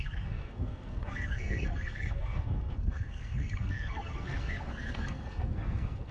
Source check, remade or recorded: remade